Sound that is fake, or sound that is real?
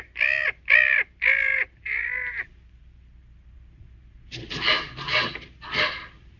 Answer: real